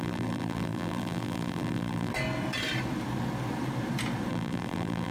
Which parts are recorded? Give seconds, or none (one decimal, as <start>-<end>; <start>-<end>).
2.1-4.3

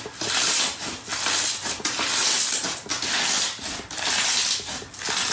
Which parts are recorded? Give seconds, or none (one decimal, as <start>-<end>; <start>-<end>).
0.0-5.3

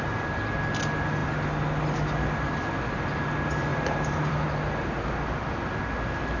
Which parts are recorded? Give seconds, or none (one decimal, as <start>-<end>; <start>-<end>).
0.0-3.7; 4.5-6.4

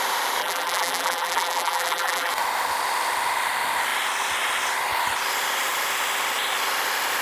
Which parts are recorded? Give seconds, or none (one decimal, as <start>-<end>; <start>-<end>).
0.0-0.4; 2.3-7.2